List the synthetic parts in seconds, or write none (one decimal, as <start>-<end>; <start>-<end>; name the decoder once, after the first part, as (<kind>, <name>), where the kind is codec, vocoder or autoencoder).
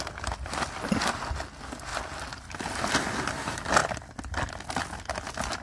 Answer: none